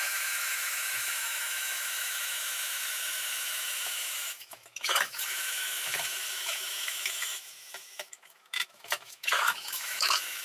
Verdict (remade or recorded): remade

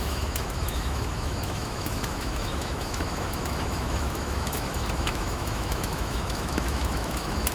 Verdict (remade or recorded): remade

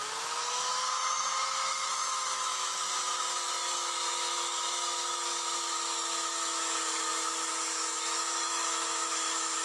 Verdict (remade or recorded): remade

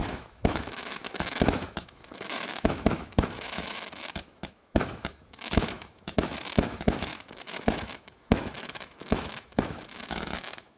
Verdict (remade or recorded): remade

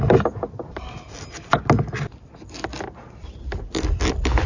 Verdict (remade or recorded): recorded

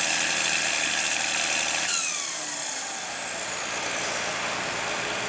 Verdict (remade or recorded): recorded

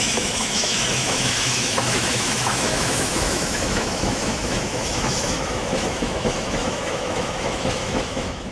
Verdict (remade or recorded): remade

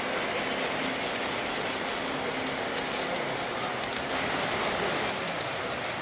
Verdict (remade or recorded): recorded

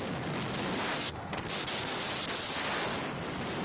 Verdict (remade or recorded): recorded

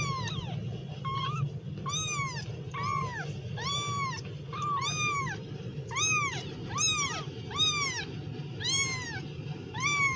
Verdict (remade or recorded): recorded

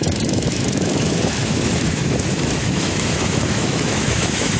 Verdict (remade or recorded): remade